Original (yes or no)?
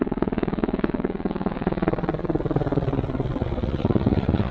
no